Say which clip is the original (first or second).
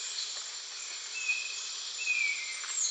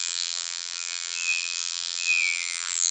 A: first